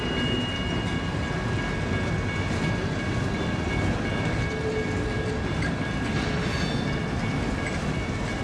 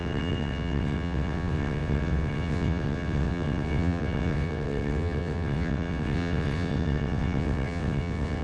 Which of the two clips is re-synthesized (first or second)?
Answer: second